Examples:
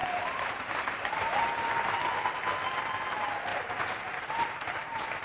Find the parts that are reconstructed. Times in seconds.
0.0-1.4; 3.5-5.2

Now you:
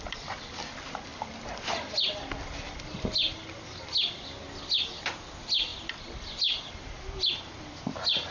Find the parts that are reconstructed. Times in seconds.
none

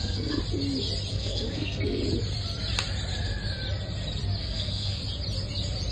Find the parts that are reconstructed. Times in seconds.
0.0-0.4; 1.1-2.0; 4.4-5.0

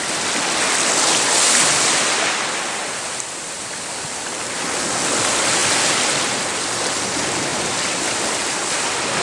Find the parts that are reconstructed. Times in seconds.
7.5-8.4

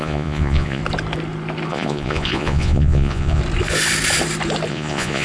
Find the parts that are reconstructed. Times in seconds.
0.0-0.8; 1.7-3.4; 4.7-5.2